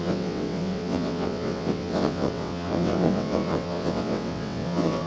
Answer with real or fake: fake